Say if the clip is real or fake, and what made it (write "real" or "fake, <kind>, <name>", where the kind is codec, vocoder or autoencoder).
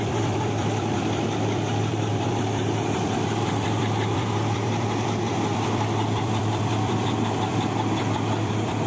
fake, vocoder, BigVGAN v2